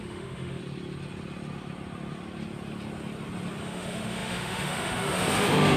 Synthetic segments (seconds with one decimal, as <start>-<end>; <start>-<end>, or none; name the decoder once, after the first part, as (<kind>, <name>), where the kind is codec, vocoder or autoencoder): 0.0-0.6 (autoencoder, DAC-VAE); 3.6-5.8